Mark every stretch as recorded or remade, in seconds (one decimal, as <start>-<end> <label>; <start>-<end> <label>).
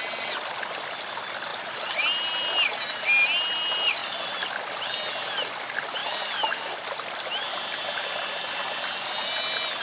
0.0-4.0 recorded; 4.0-4.6 remade; 4.6-6.0 recorded; 6.0-7.3 remade; 7.3-9.8 recorded